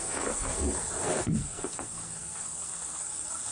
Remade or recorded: remade